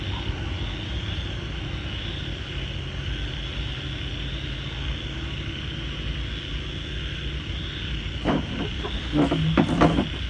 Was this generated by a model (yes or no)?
no